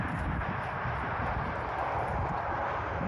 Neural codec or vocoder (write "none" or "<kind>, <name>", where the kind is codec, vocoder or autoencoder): none